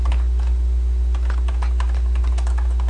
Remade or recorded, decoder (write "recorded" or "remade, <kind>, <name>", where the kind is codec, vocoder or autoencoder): recorded